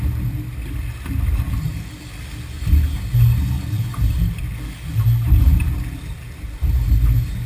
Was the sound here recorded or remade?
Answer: recorded